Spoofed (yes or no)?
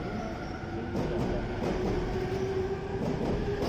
no